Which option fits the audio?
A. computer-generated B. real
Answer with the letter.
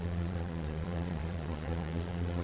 A